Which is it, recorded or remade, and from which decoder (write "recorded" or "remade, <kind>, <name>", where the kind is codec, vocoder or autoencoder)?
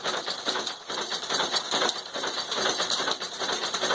recorded